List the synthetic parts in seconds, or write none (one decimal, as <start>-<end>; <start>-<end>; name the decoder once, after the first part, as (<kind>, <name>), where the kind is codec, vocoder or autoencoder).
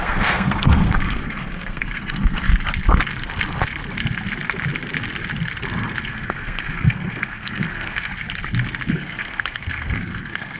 0.0-2.5 (codec, SNAC); 6.1-8.1; 8.9-10.6